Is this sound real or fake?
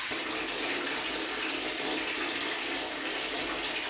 real